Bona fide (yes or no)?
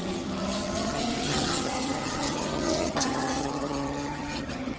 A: no